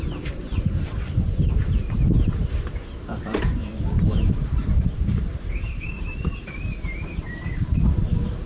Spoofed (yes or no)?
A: yes